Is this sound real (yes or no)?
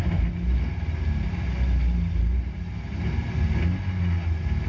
yes